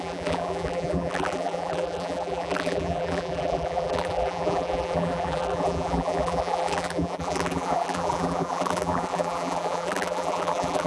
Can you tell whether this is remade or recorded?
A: remade